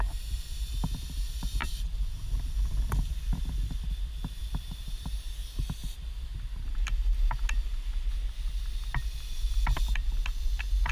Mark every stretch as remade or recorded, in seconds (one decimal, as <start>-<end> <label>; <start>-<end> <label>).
0.0-10.9 recorded